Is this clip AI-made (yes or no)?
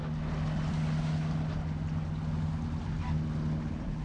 no